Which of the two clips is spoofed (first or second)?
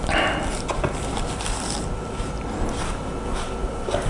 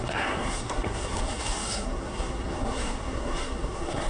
second